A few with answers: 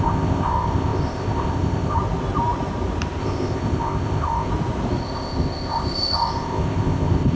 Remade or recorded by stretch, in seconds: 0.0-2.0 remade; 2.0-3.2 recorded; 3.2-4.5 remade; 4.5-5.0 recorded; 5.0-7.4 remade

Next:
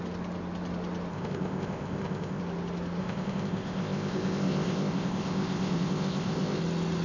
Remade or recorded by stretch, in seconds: 0.0-1.1 recorded; 1.1-2.4 remade; 2.4-3.0 recorded; 3.0-6.6 remade; 6.6-7.0 recorded

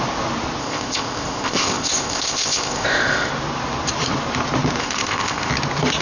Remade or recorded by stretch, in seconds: 0.0-0.6 recorded; 0.6-3.3 remade; 3.3-4.8 recorded; 4.8-5.5 remade; 5.5-6.0 recorded

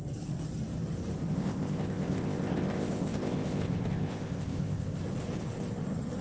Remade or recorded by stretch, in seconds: 0.0-1.3 recorded; 1.3-5.0 remade; 5.0-6.2 recorded